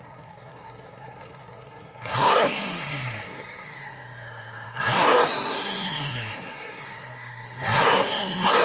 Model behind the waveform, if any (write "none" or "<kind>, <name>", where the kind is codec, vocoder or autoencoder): codec, SNAC